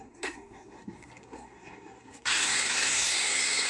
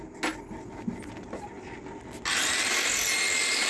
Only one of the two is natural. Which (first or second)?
second